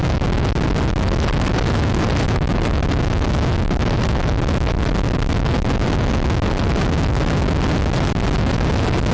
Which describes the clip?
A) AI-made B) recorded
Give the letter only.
B